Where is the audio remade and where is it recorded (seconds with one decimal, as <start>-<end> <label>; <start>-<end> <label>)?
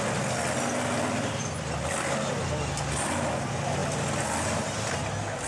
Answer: 0.0-5.5 recorded